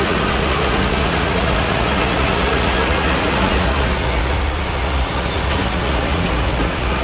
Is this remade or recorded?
remade